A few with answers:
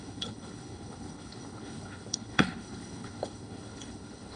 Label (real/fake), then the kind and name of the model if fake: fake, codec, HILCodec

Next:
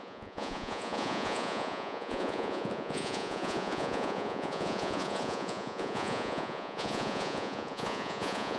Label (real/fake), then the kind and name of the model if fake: fake, vocoder, Vocos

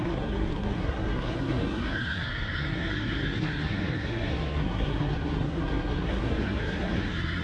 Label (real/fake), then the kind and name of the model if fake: fake, codec, SNAC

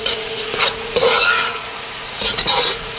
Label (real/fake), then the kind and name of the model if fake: fake, vocoder, Vocos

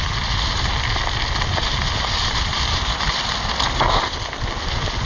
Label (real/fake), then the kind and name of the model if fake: real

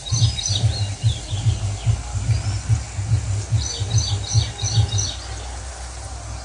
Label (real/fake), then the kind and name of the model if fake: real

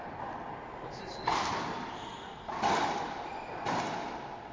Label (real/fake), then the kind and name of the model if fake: real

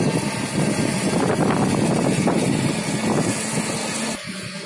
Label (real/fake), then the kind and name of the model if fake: real